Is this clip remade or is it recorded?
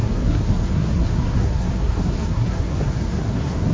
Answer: remade